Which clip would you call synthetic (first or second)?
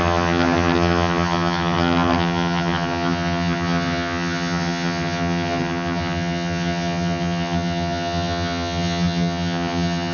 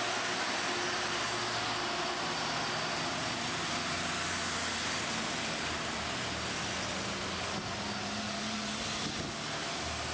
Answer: first